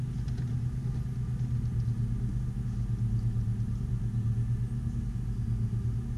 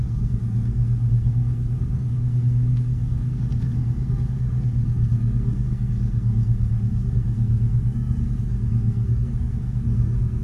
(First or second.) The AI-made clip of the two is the second